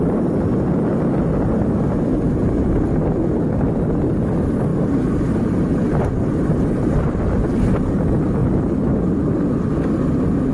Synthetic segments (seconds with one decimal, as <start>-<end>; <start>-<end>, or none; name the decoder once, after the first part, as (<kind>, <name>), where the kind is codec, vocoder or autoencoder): 4.7-7.2 (vocoder, BigVGAN v2)